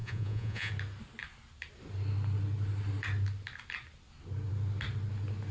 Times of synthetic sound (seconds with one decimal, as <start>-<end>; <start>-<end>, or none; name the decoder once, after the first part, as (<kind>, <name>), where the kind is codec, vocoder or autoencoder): 0.0-0.7 (vocoder, Vocos)